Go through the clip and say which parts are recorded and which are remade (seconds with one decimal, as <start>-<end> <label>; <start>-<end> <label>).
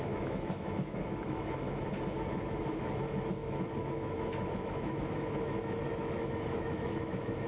0.0-7.5 remade